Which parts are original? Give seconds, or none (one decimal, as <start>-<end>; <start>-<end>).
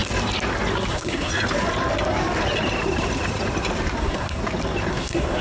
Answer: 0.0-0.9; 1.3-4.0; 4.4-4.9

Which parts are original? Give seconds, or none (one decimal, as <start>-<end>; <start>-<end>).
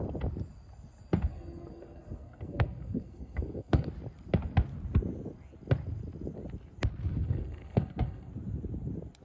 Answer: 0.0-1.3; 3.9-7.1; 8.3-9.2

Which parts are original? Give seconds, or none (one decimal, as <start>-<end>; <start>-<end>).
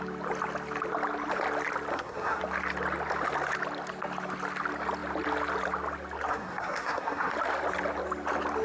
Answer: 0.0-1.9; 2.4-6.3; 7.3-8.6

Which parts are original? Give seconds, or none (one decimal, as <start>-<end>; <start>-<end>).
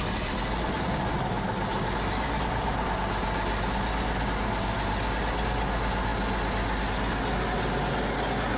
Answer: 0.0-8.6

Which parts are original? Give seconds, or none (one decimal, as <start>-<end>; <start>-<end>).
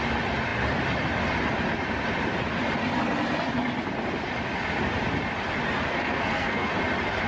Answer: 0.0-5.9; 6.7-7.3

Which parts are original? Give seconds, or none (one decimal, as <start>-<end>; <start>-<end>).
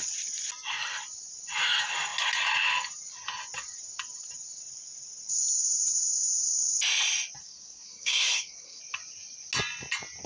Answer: 0.0-7.4; 8.8-10.3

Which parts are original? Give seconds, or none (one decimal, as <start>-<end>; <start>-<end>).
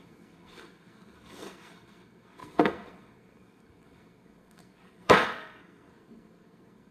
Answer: none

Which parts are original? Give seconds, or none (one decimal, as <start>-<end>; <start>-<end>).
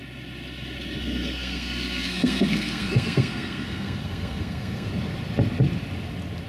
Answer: 0.0-1.0; 4.9-6.5